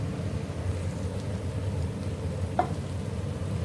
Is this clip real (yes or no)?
yes